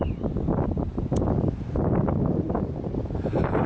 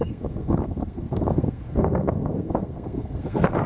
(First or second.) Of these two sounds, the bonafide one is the first